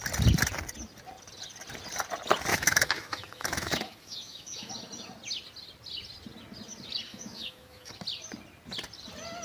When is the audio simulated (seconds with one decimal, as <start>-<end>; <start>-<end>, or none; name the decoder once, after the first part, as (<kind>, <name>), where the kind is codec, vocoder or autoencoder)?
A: 2.5-4.7 (autoencoder, DAC-VAE); 7.1-7.9